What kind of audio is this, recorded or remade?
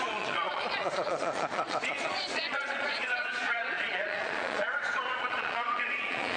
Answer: remade